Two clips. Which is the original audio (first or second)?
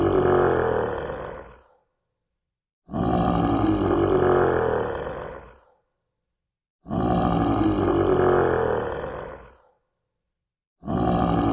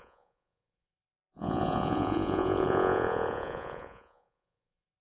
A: first